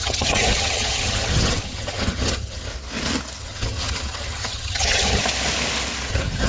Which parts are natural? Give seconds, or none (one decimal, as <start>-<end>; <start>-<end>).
2.7-3.4; 5.2-6.1